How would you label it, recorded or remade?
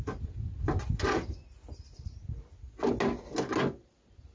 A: recorded